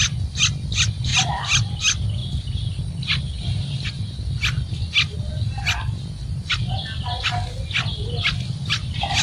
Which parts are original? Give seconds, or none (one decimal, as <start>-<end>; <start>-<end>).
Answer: 0.0-9.2